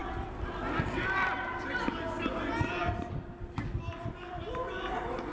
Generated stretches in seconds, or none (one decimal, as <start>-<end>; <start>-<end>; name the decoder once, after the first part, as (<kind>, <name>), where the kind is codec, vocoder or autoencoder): 0.0-2.0 (vocoder, BigVGAN v2); 3.9-4.7